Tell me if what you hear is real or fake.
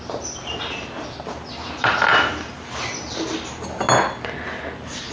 real